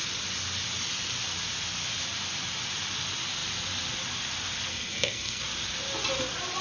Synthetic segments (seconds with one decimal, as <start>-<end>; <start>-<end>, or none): 4.7-5.4